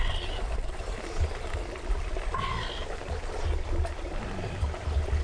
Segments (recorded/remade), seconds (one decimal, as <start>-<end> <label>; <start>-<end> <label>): 0.0-5.2 recorded